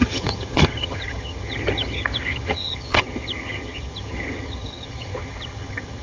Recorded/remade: remade